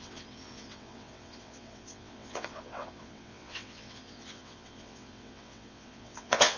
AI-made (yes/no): yes